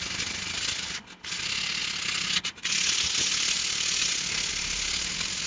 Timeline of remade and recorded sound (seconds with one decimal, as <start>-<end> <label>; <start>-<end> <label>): 0.0-5.5 recorded